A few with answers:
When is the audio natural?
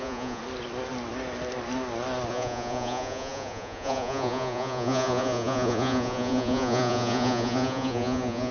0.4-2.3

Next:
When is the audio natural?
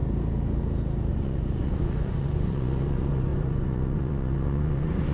0.0-1.1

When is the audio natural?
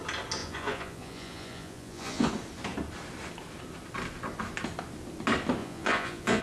0.0-0.4; 2.3-5.6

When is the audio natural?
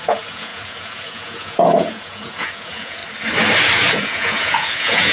3.0-3.9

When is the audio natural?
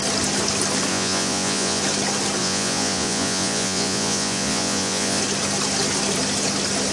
0.0-0.9; 1.8-2.4; 5.2-6.9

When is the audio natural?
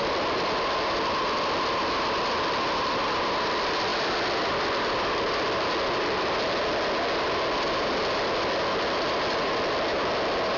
0.0-10.6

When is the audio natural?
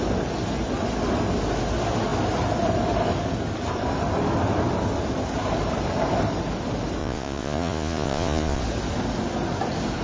0.0-7.0; 8.6-10.0